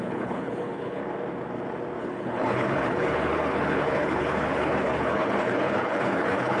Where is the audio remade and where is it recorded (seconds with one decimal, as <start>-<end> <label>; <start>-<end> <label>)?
0.0-1.0 remade; 1.0-2.0 recorded; 2.0-6.6 remade